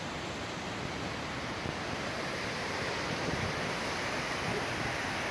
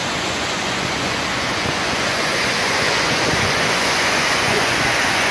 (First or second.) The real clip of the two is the first